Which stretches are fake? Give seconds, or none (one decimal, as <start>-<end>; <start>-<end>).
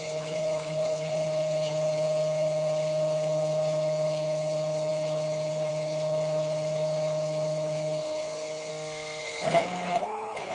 0.0-8.7; 9.2-10.5